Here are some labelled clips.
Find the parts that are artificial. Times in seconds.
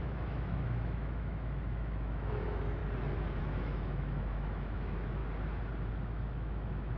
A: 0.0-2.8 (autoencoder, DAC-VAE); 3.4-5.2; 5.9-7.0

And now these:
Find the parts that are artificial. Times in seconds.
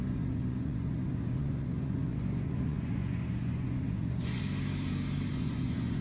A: 0.0-4.4 (vocoder, Vocos); 5.3-6.0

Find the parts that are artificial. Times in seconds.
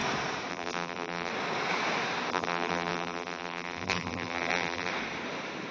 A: 0.5-1.3 (vocoder, BigVGAN v2); 2.3-4.9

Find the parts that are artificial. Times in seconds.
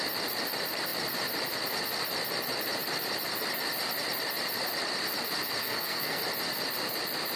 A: 5.6-6.2 (codec, SNAC)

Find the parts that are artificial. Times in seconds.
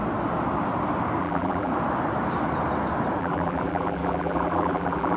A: 1.2-1.7 (vocoder, BigVGAN v2); 3.2-5.2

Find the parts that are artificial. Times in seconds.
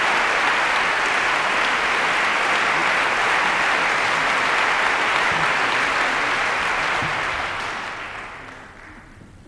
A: none